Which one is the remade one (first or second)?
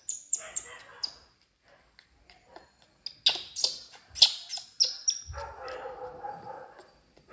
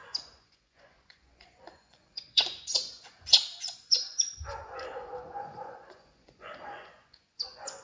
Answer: second